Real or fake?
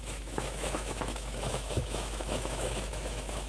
fake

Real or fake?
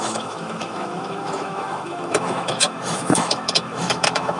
fake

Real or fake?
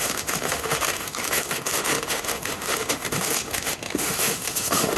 fake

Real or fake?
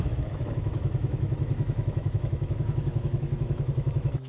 fake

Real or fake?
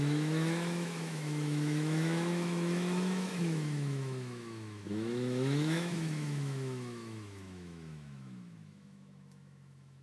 fake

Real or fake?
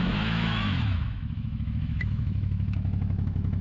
fake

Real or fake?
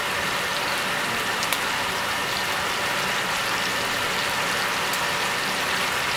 real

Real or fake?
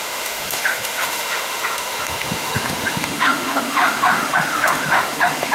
fake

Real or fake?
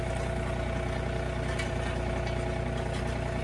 real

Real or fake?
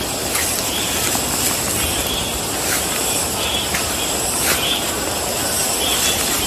real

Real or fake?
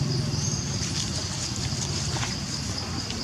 real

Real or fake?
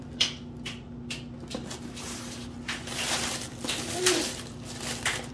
real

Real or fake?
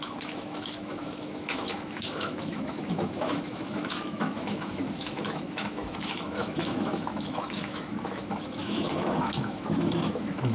fake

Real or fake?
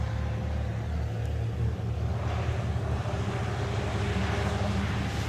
real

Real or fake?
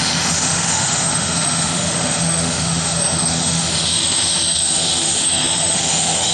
fake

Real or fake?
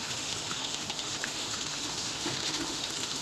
fake